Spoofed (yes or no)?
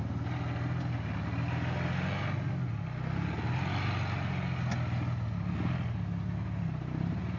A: no